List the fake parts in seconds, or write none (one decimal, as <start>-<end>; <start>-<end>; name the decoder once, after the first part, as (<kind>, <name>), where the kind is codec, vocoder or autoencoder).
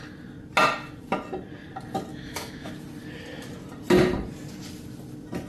2.1-2.7 (autoencoder, DAC-VAE)